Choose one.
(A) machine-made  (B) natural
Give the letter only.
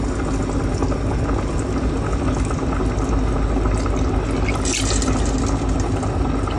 B